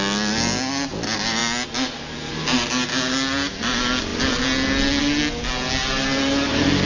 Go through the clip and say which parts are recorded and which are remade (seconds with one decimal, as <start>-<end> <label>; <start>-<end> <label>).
0.0-6.9 recorded